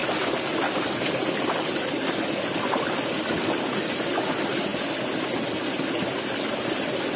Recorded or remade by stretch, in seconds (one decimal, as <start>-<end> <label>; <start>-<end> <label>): 0.0-7.2 recorded